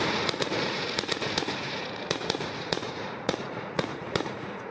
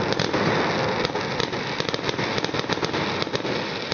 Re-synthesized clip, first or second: first